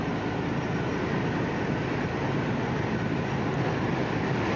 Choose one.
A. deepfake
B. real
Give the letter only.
B